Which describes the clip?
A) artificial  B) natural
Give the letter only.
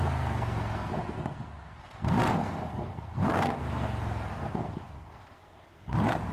A